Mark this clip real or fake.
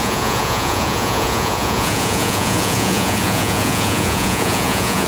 fake